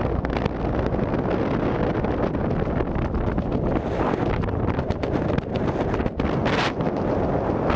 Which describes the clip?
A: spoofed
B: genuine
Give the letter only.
B